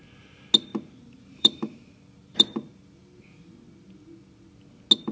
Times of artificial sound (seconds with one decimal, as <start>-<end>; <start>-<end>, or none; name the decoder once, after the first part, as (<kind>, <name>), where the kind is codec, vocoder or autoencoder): 0.7-3.0 (vocoder, BigVGAN v2)